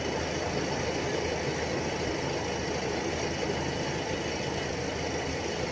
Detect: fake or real real